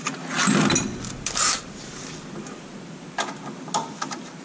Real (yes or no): yes